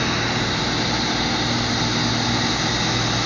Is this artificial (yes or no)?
no